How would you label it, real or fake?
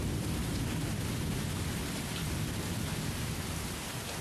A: real